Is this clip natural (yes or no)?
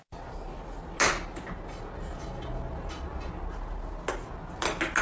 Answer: yes